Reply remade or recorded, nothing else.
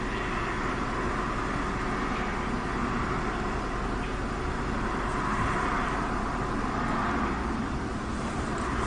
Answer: recorded